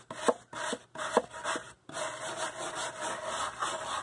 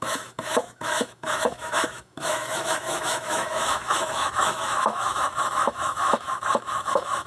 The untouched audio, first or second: first